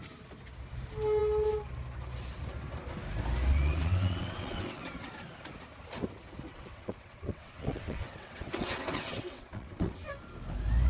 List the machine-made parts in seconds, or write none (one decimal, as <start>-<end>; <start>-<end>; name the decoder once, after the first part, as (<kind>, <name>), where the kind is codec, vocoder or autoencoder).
3.5-5.1 (vocoder, WaveNeXt); 6.5-10.1